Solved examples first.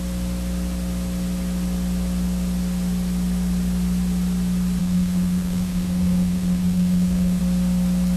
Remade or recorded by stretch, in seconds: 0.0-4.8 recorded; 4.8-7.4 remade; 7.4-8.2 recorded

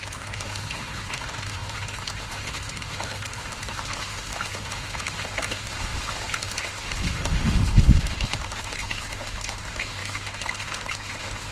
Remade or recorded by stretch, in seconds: 0.0-11.5 remade

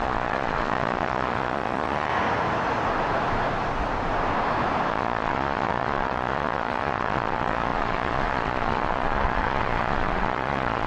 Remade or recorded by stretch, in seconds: 0.0-2.1 remade; 2.1-4.9 recorded; 4.9-10.9 remade

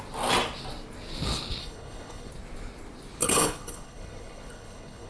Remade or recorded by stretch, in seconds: 0.0-1.6 recorded; 1.6-2.3 remade; 2.3-3.2 recorded; 3.2-5.1 remade

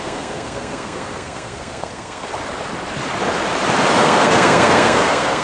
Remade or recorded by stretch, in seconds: 0.0-2.3 remade; 2.3-4.0 recorded; 4.0-5.4 remade

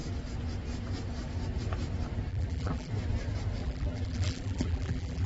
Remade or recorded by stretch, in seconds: 0.0-2.3 recorded; 2.3-2.9 remade; 2.9-3.6 recorded; 3.6-5.3 remade